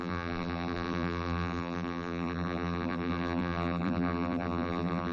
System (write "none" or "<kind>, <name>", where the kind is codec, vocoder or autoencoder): vocoder, BigVGAN v2